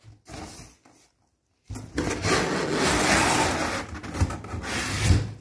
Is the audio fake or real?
real